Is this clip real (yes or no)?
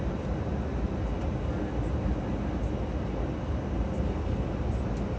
yes